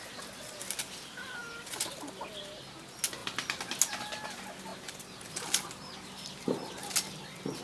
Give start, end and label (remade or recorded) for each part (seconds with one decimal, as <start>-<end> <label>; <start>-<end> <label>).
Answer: 0.0-7.6 recorded